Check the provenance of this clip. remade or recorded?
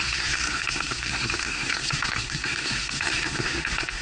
remade